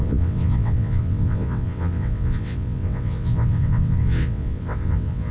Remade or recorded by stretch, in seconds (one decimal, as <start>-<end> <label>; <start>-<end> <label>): 0.0-5.3 remade